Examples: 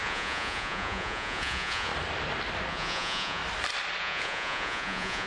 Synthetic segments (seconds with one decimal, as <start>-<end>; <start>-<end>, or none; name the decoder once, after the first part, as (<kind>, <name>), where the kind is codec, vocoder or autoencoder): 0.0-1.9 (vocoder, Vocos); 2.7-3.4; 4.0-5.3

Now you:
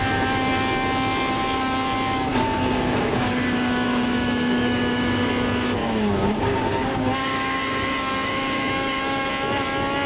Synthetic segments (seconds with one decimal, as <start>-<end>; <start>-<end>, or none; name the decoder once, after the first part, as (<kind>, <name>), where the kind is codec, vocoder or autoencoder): 2.3-5.3 (codec, DAC); 5.8-9.3

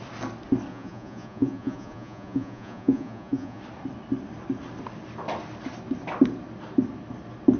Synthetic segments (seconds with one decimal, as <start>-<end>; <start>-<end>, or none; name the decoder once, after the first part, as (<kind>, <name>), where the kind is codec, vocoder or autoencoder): 0.7-3.6 (vocoder, Vocos)

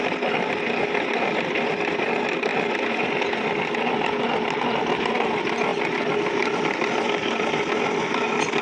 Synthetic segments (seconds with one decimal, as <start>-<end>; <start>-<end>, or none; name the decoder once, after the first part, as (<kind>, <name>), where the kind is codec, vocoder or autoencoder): none

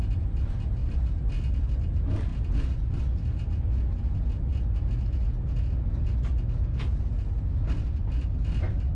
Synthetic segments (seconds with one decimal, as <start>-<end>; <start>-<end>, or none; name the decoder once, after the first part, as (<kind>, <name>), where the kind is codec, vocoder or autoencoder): 2.3-3.0 (vocoder, BigVGAN v2)

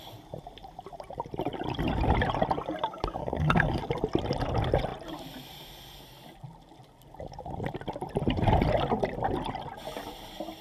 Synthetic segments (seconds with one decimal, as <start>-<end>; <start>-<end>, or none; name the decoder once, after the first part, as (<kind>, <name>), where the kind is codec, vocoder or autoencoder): 3.2-3.8 (codec, SNAC)